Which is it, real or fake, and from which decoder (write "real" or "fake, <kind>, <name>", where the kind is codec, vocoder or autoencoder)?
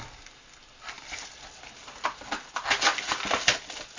real